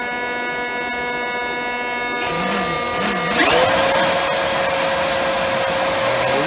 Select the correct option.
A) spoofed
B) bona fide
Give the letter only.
B